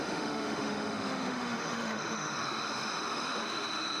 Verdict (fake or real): fake